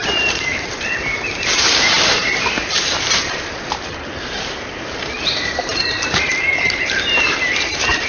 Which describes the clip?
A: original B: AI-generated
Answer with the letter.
B